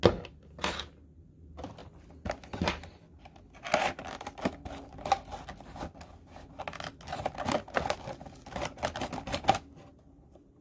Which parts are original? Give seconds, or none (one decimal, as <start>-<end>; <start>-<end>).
0.0-10.6